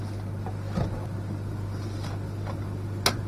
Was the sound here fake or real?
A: real